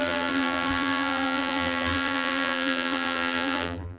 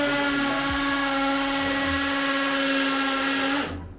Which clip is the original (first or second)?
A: second